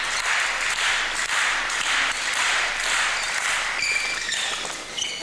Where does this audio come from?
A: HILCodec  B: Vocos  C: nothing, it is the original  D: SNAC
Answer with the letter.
C